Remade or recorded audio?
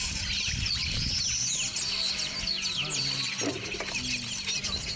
recorded